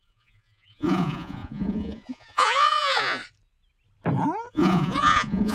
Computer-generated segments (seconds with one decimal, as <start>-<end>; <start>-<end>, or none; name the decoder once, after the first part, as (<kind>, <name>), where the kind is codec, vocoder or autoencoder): 0.0-3.2 (vocoder, Vocos); 4.5-5.5